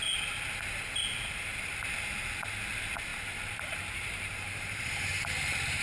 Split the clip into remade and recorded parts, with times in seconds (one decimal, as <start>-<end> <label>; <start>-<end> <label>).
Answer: 0.0-3.1 recorded; 3.1-5.8 remade